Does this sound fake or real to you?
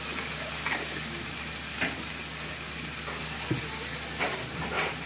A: real